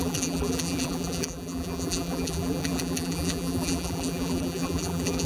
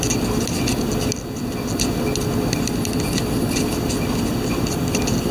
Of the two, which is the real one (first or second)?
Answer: second